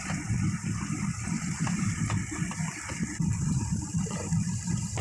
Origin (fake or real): fake